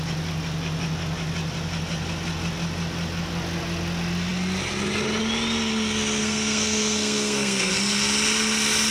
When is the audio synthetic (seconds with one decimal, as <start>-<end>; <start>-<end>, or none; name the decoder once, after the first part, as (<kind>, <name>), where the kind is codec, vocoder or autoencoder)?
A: 6.2-7.7 (codec, SNAC)